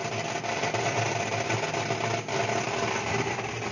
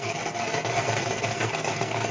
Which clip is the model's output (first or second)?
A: second